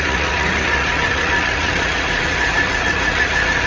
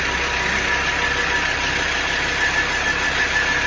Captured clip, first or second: second